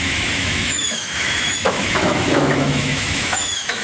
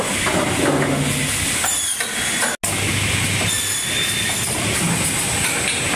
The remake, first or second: first